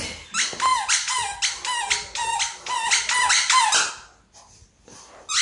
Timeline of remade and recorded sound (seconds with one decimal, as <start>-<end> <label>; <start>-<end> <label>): 0.0-5.4 recorded